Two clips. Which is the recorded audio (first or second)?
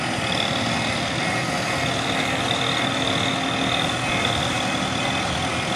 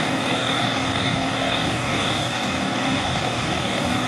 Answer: first